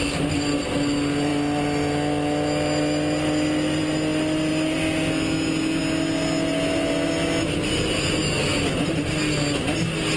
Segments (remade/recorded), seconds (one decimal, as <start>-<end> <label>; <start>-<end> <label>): 0.0-10.2 recorded